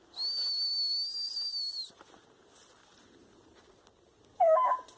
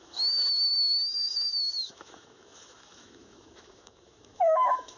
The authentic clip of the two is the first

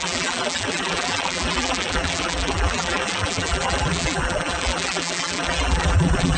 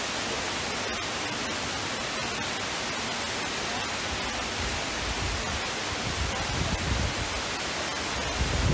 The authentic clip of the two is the second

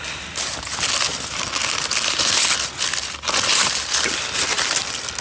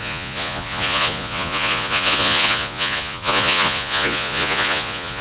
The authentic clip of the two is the first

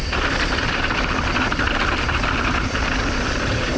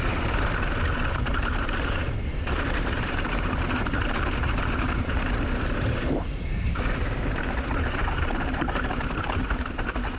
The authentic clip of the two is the first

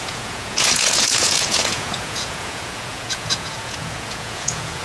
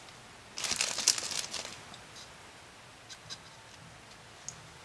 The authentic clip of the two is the second